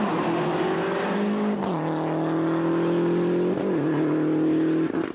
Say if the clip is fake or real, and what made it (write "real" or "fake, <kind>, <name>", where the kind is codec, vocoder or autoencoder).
real